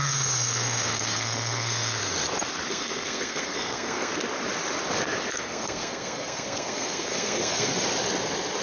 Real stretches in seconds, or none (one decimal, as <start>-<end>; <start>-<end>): 2.0-2.7; 4.1-5.3; 7.7-8.6